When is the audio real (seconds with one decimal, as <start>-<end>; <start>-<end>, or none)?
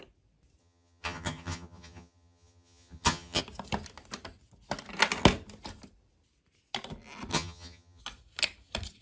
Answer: 0.0-0.6; 3.4-7.3; 8.0-9.0